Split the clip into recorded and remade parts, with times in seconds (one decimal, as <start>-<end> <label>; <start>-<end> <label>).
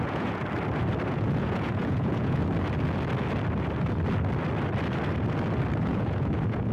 0.0-0.4 remade; 0.4-1.1 recorded; 1.1-2.4 remade; 2.4-5.8 recorded; 5.8-6.7 remade